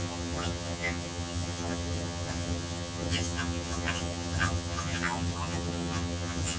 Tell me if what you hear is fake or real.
fake